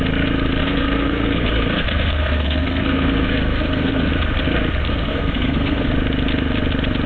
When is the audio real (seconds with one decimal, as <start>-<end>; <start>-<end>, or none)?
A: 0.0-0.6; 4.1-4.9; 5.9-7.1